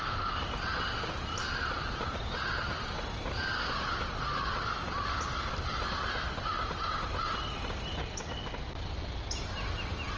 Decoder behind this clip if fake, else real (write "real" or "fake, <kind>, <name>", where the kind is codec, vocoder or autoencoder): real